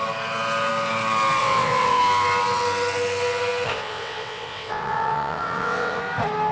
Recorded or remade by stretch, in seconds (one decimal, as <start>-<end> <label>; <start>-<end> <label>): 0.0-1.4 recorded; 1.4-2.0 remade; 2.0-3.7 recorded; 3.7-6.0 remade; 6.0-6.5 recorded